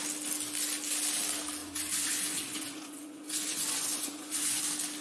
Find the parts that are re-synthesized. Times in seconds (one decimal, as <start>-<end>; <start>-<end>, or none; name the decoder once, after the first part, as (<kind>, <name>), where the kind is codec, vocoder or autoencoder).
1.6-4.6 (vocoder, Vocos)